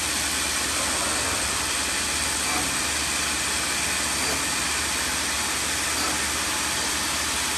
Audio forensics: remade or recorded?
recorded